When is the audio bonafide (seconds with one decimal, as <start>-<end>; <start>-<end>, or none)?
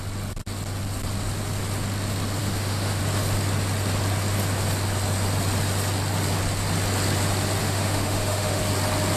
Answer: 0.0-2.4; 3.0-7.6; 8.6-9.2